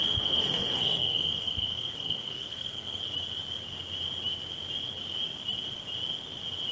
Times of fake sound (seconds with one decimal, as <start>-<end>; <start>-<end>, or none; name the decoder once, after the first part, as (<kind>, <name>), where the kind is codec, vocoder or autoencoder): 0.0-3.0 (codec, SNAC)

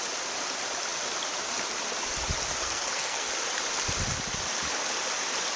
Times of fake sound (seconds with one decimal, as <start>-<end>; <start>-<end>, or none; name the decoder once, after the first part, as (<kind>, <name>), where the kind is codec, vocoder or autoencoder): 2.6-3.3 (codec, SNAC)

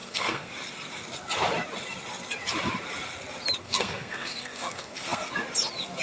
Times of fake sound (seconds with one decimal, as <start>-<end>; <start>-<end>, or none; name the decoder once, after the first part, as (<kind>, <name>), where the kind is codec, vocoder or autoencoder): 0.0-0.5 (codec, SNAC); 3.6-5.3

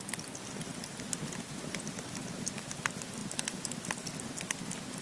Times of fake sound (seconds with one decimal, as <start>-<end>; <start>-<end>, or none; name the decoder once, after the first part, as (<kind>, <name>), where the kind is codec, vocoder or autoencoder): none

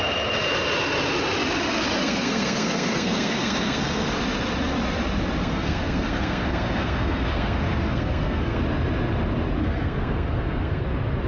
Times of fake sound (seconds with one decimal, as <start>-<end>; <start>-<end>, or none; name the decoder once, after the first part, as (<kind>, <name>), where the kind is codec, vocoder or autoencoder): 2.0-4.1 (codec, SNAC); 5.4-8.6; 9.6-10.8